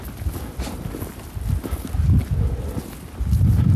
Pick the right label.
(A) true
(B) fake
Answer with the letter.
A